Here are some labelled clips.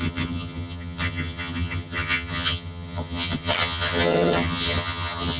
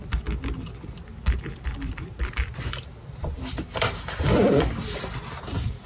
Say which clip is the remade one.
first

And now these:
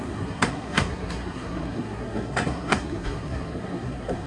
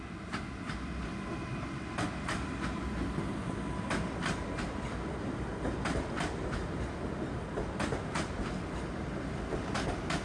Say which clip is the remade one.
first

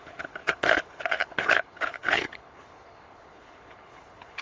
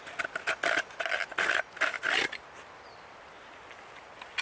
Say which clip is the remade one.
first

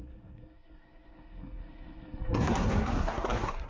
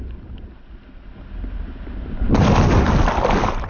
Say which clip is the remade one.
first